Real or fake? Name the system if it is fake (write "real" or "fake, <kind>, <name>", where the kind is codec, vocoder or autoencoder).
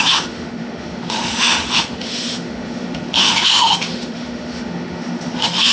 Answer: fake, autoencoder, DAC-VAE